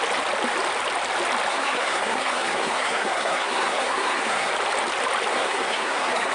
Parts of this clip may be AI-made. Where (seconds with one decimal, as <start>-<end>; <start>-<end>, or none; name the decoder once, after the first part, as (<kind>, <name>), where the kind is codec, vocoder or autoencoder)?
1.5-4.5 (codec, SNAC); 5.3-6.3